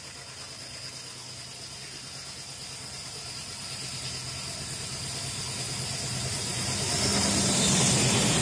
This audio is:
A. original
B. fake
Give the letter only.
A